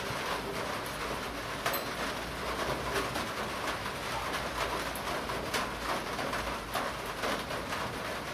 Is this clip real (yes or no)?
yes